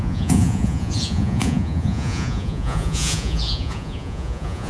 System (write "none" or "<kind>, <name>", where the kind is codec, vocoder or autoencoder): vocoder, Vocos